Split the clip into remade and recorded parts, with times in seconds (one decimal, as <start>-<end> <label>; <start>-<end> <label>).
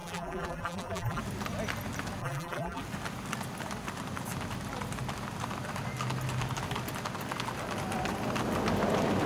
0.0-1.2 remade; 1.2-2.2 recorded; 2.2-2.8 remade; 2.8-9.3 recorded